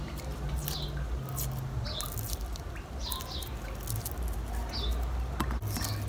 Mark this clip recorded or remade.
recorded